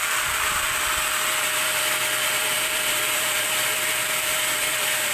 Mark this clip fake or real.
fake